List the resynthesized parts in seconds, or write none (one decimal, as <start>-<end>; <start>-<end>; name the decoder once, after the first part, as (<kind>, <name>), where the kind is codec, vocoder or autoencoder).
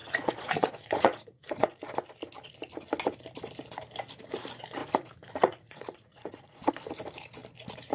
0.0-1.8 (vocoder, Vocos); 4.8-6.7